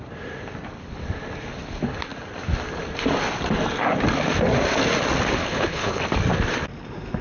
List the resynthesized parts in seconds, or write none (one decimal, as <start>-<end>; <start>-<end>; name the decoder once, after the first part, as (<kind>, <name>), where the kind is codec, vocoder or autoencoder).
5.4-6.0 (codec, HILCodec)